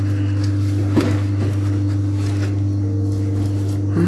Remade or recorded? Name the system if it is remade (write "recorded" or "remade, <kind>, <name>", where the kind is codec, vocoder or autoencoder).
recorded